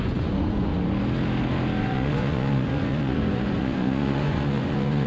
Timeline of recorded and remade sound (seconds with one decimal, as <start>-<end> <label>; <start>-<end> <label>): 0.0-0.7 remade; 0.7-1.8 recorded; 1.8-5.1 remade